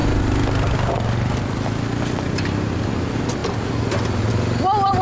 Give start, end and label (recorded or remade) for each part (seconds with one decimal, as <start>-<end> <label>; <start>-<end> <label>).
0.0-5.0 recorded